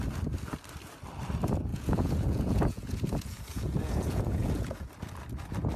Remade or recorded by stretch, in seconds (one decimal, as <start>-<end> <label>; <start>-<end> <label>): 0.0-1.7 recorded; 1.7-4.9 remade; 4.9-5.8 recorded